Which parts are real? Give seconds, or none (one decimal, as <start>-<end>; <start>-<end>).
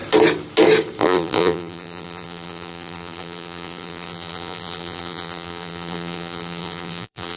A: 0.0-1.0